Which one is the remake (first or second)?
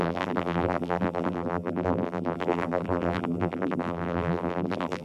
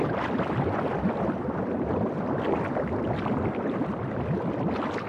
first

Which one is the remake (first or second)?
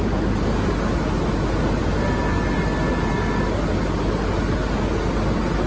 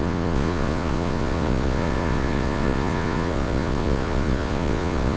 second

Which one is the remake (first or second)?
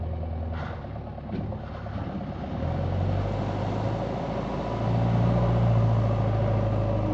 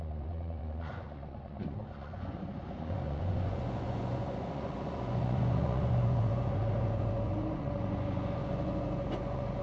second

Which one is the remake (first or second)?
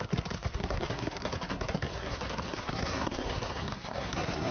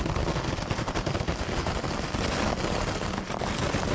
first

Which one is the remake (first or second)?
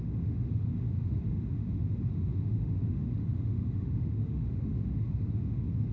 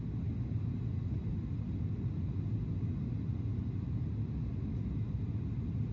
first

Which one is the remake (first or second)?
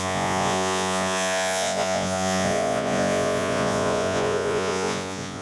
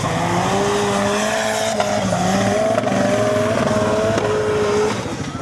first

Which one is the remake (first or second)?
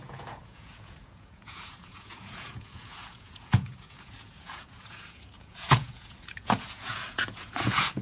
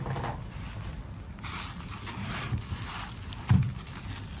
first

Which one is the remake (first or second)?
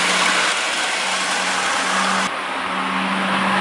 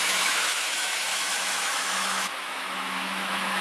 second